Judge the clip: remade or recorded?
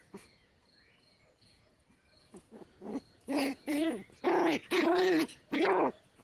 remade